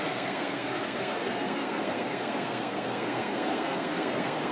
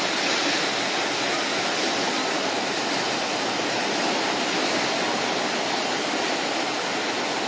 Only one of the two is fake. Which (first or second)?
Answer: first